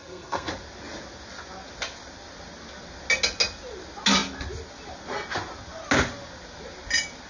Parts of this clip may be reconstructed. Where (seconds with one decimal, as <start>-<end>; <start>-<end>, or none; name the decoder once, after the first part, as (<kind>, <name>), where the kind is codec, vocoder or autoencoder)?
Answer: 0.0-0.5 (codec, SNAC)